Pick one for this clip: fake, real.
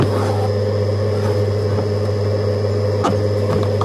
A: real